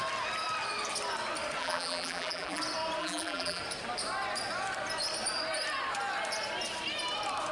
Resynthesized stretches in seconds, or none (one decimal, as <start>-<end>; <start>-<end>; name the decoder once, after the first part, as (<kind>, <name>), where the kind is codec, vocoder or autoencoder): 1.6-2.6 (vocoder, BigVGAN v2); 3.0-3.6